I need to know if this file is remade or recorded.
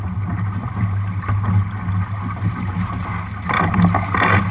recorded